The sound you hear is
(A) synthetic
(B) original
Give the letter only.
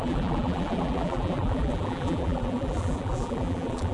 A